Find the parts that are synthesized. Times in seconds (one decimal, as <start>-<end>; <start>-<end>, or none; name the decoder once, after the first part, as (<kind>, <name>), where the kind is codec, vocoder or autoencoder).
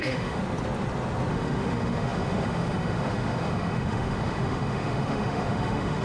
0.0-0.4 (autoencoder, DAC-VAE); 1.3-6.0